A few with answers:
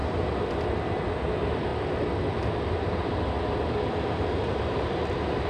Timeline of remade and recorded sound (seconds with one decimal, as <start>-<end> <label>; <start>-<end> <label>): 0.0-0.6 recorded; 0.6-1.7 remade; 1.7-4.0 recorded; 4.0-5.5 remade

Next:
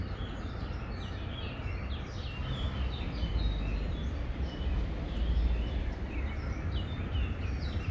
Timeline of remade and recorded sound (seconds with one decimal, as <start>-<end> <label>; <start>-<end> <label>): 0.0-0.8 remade; 0.8-7.9 recorded

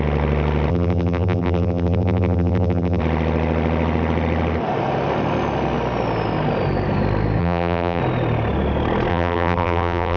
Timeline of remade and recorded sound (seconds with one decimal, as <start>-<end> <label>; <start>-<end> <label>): 0.0-0.7 recorded; 0.7-3.0 remade; 3.0-7.4 recorded; 7.4-8.0 remade; 8.0-9.1 recorded; 9.1-10.2 remade

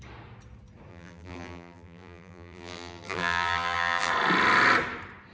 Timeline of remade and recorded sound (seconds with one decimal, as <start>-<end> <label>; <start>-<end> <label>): 0.0-0.9 recorded; 0.9-4.1 remade; 4.1-5.3 recorded